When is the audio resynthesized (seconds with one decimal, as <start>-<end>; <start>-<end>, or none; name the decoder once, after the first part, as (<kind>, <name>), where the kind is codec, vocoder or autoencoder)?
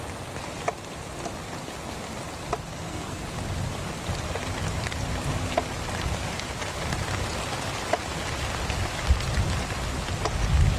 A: 2.7-3.2 (codec, SNAC)